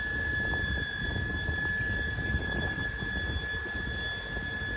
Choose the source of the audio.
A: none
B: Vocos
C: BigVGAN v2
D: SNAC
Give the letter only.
A